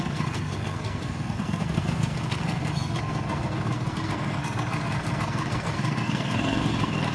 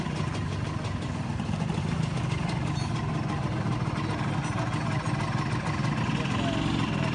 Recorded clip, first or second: second